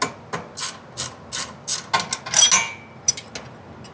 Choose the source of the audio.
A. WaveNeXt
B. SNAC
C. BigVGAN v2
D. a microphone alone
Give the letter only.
D